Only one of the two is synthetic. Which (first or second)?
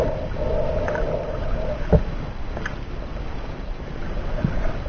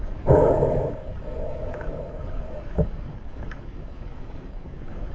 second